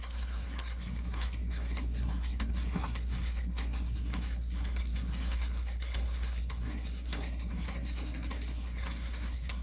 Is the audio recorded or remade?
remade